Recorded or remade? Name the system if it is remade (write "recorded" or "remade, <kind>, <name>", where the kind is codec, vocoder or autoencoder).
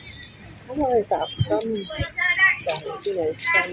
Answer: recorded